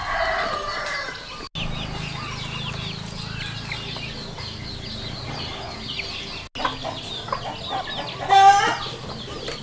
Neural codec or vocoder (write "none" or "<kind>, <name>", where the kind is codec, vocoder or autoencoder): none